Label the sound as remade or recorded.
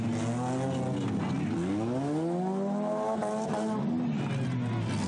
recorded